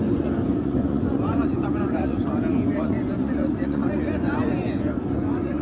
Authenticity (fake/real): fake